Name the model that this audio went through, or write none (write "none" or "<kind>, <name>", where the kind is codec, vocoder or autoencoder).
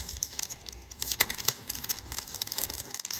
codec, DAC